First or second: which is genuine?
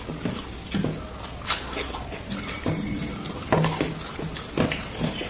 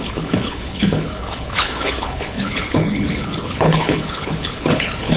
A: first